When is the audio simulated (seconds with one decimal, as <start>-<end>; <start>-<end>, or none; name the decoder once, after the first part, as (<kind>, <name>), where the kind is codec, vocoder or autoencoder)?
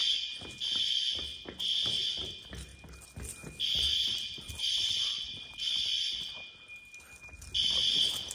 2.7-6.3 (vocoder, BigVGAN v2)